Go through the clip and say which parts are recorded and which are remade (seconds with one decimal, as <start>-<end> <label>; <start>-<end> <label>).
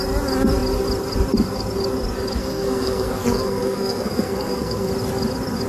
0.0-2.4 recorded; 2.4-4.9 remade; 4.9-5.7 recorded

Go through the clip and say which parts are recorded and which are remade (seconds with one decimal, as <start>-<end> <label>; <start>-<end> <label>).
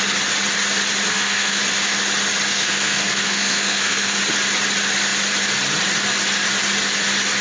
0.0-1.1 recorded; 1.1-1.6 remade; 1.6-2.5 recorded; 2.5-4.2 remade; 4.2-7.4 recorded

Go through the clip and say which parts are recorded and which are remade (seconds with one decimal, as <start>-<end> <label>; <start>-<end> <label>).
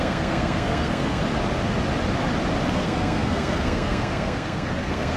0.0-1.2 remade; 1.2-2.7 recorded; 2.7-5.2 remade